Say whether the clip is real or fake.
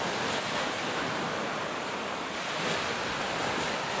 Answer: real